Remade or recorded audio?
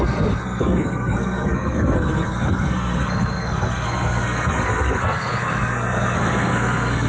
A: remade